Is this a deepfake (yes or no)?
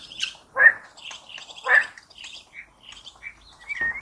no